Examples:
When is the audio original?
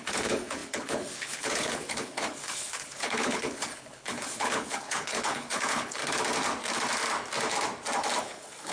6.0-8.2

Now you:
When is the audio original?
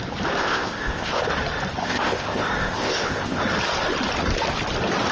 0.0-0.4; 1.2-1.8; 3.4-5.1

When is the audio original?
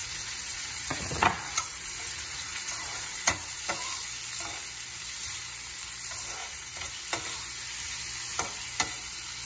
3.7-6.4; 6.9-9.5